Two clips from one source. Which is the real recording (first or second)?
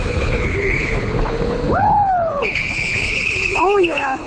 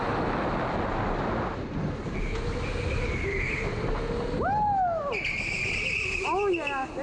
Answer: second